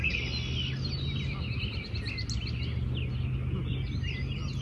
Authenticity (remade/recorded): recorded